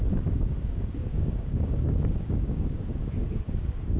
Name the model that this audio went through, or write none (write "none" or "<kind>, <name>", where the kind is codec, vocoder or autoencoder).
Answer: codec, DAC